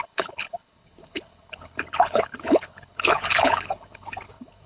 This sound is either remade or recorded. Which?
remade